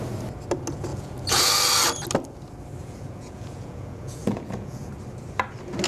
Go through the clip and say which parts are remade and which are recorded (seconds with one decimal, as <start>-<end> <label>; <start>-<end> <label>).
0.0-0.9 recorded; 0.9-1.5 remade; 1.5-2.8 recorded; 2.8-4.9 remade; 4.9-5.9 recorded